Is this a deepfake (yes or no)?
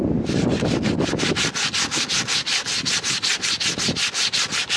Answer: no